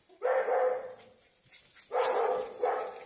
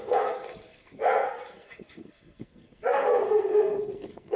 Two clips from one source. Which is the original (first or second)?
first